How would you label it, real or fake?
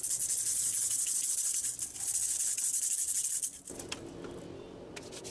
real